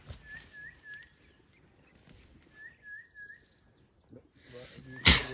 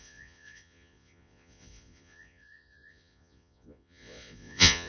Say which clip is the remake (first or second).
second